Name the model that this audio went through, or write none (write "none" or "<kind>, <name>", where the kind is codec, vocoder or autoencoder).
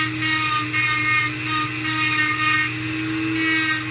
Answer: none